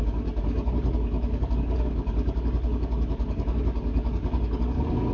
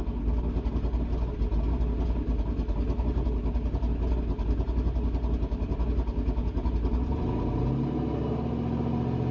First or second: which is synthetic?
first